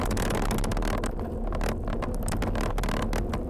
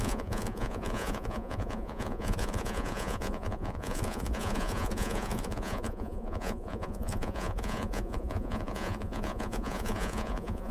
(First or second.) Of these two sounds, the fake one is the second